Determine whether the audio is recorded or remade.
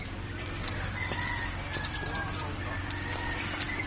remade